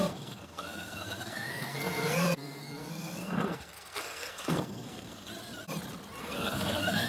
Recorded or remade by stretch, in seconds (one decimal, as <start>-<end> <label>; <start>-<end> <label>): 0.0-5.3 remade; 5.3-6.2 recorded; 6.2-7.1 remade

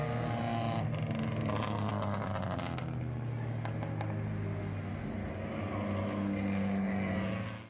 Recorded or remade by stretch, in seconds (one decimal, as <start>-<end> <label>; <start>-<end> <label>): 0.0-7.7 recorded

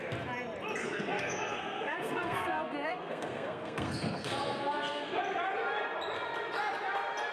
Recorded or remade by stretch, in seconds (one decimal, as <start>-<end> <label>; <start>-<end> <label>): 0.0-0.8 recorded; 0.8-5.2 remade; 5.2-7.3 recorded

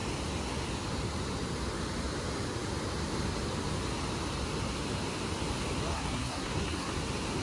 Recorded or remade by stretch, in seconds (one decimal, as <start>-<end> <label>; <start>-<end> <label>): 0.0-5.9 recorded; 5.9-6.9 remade; 6.9-7.4 recorded